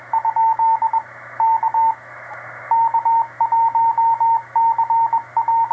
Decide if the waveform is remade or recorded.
remade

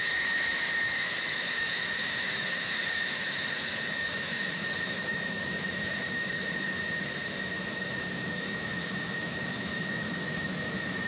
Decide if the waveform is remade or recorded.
remade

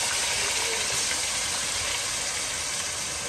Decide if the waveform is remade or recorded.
recorded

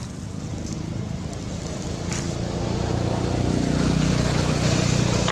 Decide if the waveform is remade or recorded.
recorded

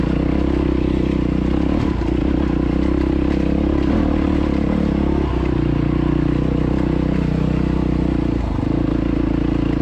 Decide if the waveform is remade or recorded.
recorded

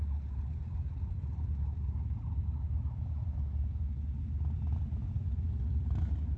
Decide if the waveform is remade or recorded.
recorded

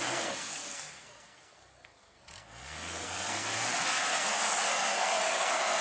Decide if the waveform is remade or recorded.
remade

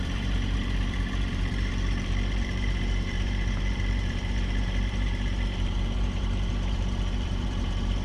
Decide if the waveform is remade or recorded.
remade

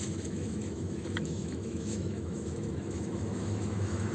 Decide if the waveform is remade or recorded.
remade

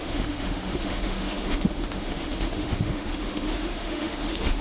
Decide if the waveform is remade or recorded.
remade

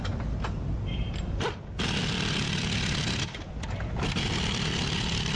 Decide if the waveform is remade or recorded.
recorded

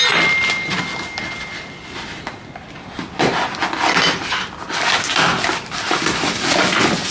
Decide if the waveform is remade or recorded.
recorded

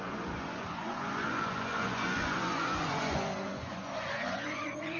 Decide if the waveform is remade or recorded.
remade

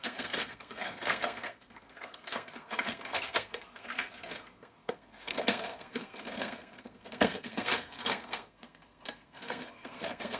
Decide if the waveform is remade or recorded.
remade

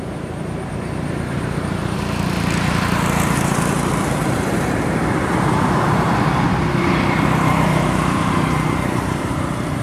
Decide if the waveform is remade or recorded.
remade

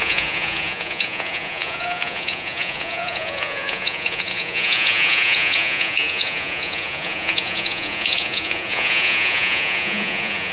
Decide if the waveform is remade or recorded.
remade